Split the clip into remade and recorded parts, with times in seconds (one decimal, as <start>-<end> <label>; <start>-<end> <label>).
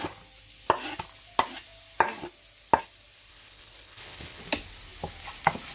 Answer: 0.0-3.3 recorded; 3.3-4.4 remade; 4.4-5.7 recorded